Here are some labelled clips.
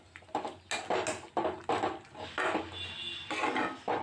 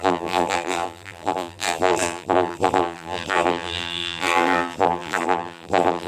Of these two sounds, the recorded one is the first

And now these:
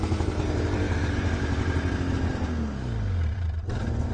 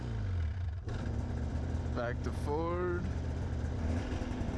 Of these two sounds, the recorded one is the first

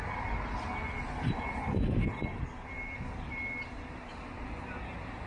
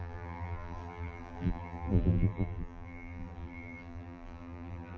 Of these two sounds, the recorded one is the first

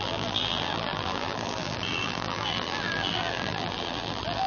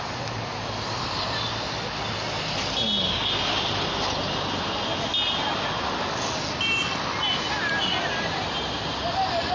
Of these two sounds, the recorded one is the second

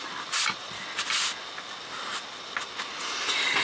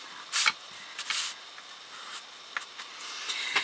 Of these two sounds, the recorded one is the first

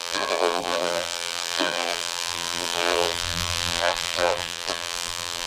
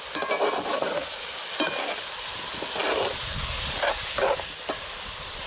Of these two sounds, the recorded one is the second